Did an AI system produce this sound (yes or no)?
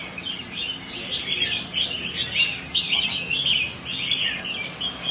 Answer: no